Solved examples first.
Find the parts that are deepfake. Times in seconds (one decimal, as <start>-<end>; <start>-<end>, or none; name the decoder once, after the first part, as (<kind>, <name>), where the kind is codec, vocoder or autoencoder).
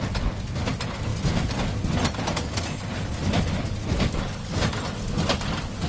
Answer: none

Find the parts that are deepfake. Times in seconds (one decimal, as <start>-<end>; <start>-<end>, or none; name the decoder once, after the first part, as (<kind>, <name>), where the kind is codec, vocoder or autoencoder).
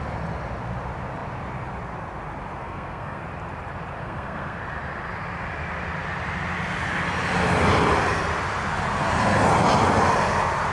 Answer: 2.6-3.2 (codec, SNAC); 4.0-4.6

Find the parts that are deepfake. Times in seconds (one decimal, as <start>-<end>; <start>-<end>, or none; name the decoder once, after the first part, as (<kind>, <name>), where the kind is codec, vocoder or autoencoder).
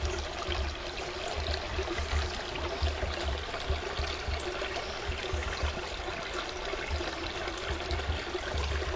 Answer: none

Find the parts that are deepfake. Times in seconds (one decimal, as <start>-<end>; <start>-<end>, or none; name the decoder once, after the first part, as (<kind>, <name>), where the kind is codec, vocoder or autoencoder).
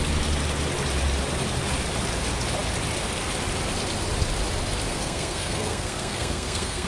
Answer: 4.9-6.9 (codec, SNAC)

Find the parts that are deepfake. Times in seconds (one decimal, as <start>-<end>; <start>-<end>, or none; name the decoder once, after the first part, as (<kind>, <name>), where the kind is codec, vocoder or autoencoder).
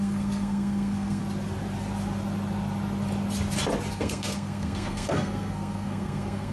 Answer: 0.0-1.2 (codec, SNAC); 3.9-6.5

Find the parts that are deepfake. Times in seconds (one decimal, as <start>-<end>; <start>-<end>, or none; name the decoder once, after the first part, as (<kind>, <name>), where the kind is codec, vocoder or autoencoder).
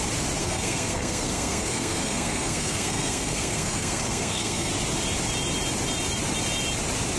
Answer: 0.4-4.7 (codec, SNAC)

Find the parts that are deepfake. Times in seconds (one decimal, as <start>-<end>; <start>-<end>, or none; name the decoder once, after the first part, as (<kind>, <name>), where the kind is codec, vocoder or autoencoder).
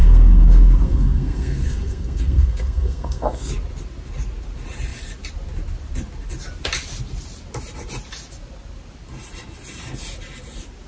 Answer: 0.0-3.5 (codec, SNAC)